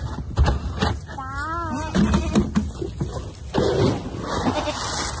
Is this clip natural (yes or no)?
yes